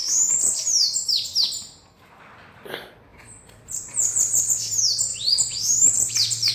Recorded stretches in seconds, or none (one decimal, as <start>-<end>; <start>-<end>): 0.0-3.1; 4.5-5.1